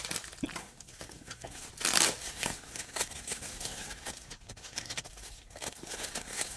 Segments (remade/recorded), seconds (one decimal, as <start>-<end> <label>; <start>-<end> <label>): 0.0-0.6 recorded; 0.6-1.7 remade; 1.7-2.2 recorded; 2.2-6.6 remade